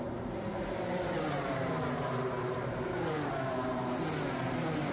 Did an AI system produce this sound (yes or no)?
yes